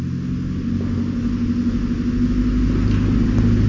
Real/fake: real